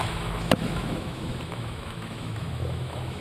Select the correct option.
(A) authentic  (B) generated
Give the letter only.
B